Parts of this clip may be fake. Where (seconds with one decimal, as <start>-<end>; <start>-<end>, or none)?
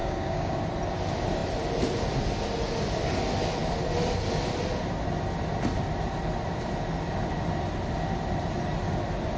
0.0-0.6